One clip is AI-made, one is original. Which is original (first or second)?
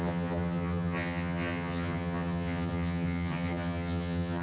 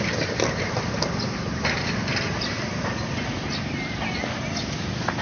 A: second